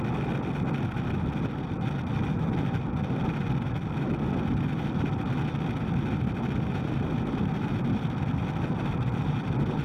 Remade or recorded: recorded